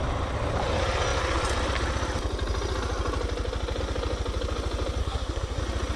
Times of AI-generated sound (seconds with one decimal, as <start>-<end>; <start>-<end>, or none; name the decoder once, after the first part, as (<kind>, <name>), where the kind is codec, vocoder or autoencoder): 5.0-5.6 (codec, SNAC)